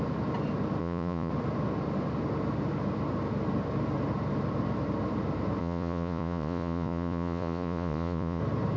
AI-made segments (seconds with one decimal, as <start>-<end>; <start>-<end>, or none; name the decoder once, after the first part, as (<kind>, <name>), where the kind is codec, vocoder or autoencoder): 0.8-1.3 (vocoder, Vocos); 5.6-8.4